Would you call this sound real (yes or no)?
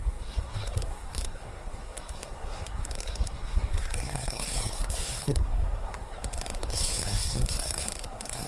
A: no